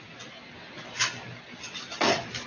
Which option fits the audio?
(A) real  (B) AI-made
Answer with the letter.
A